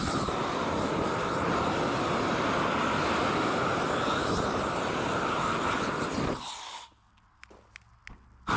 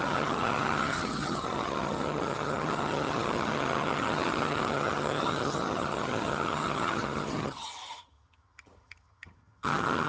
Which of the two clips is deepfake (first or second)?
second